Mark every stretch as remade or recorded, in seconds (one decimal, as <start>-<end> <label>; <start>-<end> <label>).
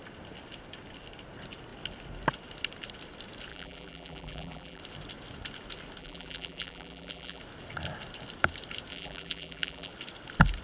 0.0-3.5 recorded; 3.5-4.8 remade; 4.8-6.0 recorded; 6.0-7.4 remade; 7.4-8.9 recorded; 8.9-9.9 remade; 9.9-10.6 recorded